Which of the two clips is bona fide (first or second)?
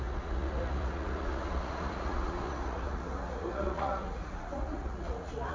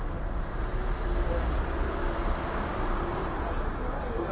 second